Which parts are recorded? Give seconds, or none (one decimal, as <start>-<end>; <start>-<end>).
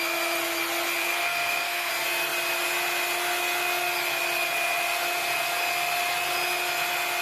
0.0-1.0; 1.9-7.2